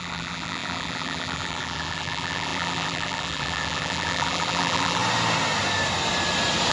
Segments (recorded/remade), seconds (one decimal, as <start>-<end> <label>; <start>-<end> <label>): 0.0-5.0 remade; 5.0-6.7 recorded